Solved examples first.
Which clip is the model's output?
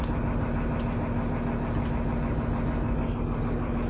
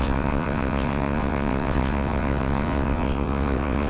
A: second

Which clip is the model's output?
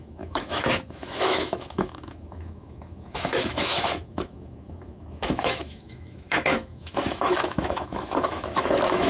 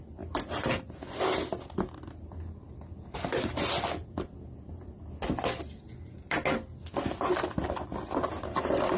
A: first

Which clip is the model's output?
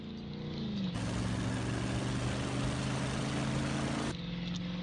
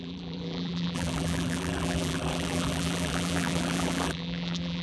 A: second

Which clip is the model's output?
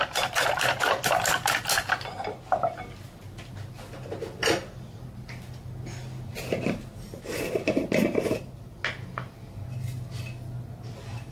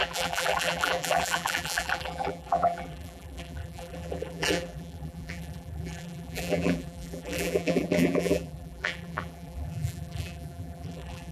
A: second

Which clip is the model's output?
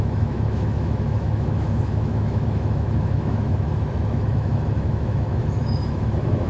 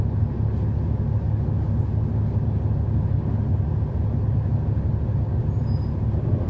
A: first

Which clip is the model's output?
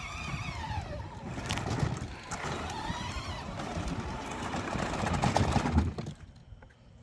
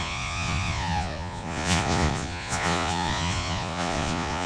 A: second